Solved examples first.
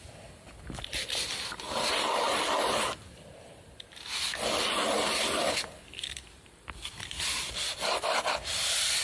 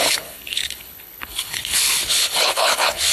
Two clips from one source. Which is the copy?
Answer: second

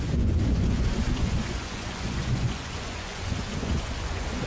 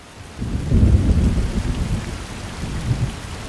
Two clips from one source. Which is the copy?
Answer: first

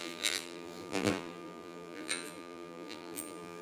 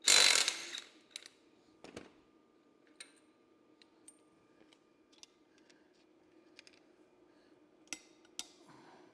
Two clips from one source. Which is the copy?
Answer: first